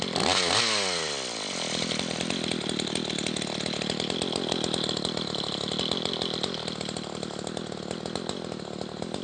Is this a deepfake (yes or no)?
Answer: no